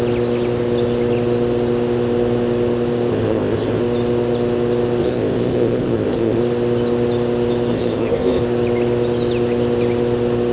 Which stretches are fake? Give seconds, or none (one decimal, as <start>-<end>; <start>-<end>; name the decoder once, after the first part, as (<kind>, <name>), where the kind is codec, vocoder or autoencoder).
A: 3.1-3.8 (codec, ZipCodec); 5.0-6.4; 7.7-8.4